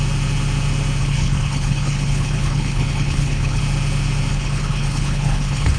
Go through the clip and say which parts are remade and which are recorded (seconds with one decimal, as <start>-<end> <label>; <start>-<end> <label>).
0.0-1.0 recorded; 1.0-3.6 remade; 3.6-4.3 recorded; 4.3-5.8 remade